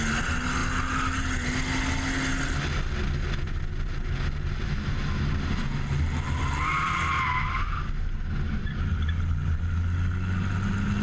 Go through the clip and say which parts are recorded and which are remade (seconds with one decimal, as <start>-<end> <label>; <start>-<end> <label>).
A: 0.0-11.0 recorded